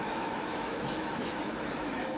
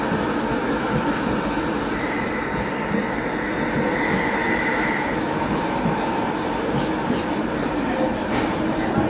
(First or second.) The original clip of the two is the second